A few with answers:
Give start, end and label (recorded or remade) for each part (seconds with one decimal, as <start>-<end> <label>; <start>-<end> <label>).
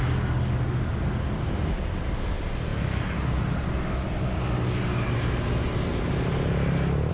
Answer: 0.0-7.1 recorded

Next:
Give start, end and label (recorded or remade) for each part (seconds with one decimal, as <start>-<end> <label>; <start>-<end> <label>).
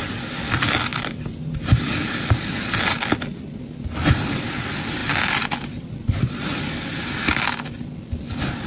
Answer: 0.0-8.7 recorded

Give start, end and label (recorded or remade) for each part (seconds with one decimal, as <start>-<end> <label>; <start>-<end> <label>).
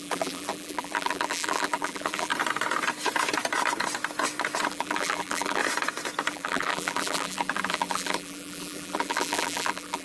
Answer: 0.0-2.3 remade; 2.3-4.7 recorded; 4.7-5.6 remade; 5.6-6.3 recorded; 6.3-10.0 remade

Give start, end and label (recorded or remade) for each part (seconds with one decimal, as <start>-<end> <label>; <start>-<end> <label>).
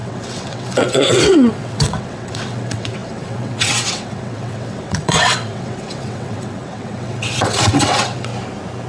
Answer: 0.0-8.3 remade; 8.3-8.9 recorded